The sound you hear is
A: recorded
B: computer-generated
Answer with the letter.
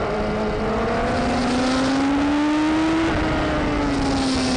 A